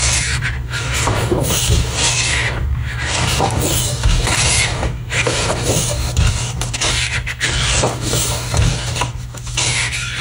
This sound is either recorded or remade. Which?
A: remade